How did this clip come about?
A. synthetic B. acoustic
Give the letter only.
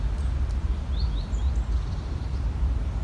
B